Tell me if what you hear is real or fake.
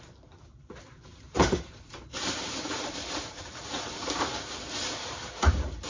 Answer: fake